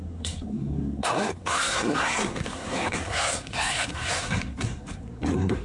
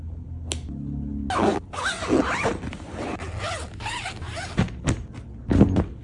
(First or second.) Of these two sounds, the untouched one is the second